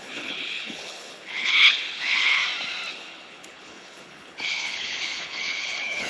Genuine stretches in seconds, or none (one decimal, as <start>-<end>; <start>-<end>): 2.4-2.9